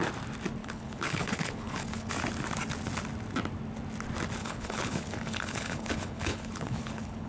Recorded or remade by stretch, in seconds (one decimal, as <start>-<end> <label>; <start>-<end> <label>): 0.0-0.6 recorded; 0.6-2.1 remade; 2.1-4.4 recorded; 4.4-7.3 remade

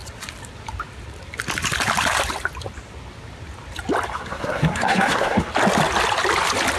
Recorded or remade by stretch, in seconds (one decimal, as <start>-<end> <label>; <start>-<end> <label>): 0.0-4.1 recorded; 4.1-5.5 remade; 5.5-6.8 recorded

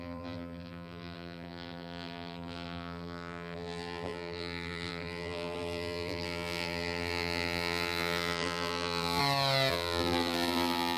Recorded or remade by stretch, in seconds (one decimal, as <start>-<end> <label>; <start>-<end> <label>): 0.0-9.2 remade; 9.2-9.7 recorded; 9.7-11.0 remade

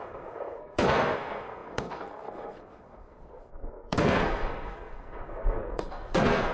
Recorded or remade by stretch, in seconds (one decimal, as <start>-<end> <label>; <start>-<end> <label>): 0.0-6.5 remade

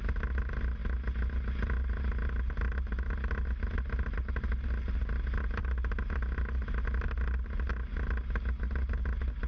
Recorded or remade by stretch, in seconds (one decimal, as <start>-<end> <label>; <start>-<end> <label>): 0.0-9.5 recorded